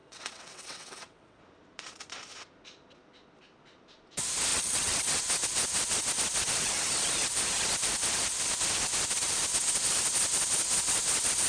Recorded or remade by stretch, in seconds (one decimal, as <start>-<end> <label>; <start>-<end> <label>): 0.0-1.4 remade; 1.4-4.5 recorded; 4.5-5.2 remade; 5.2-11.5 recorded